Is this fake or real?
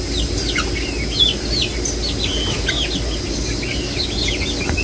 real